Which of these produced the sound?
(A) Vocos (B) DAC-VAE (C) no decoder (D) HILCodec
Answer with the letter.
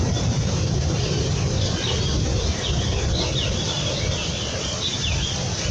C